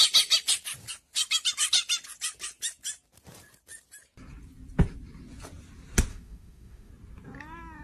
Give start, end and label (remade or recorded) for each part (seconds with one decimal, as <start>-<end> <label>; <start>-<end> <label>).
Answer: 0.0-6.1 recorded; 6.1-6.9 remade; 6.9-7.8 recorded